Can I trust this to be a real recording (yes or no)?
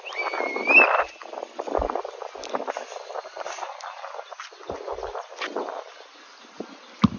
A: yes